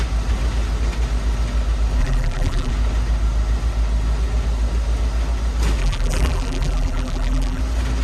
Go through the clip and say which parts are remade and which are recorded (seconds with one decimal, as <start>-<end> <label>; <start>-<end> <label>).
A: 0.0-2.0 recorded; 2.0-2.7 remade; 2.7-5.8 recorded; 5.8-7.6 remade; 7.6-8.0 recorded